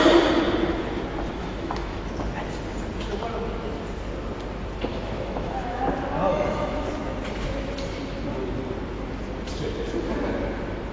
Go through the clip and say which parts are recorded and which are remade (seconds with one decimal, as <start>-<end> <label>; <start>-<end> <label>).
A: 0.0-1.4 recorded; 1.4-2.1 remade; 2.1-4.9 recorded; 4.9-5.8 remade; 5.8-6.3 recorded; 6.3-7.0 remade; 7.0-10.9 recorded